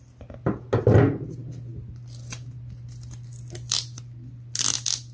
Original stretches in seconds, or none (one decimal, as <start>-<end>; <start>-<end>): 0.0-5.1

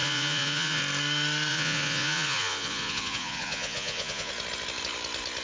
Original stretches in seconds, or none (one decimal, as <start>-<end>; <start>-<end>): 0.8-1.5; 4.3-5.4